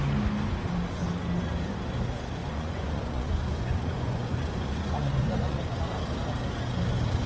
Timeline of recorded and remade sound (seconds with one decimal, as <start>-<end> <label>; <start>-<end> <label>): 0.0-2.4 recorded; 2.4-5.6 remade; 5.6-7.3 recorded